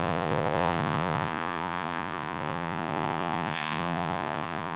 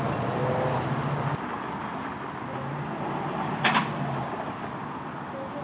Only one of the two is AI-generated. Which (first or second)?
first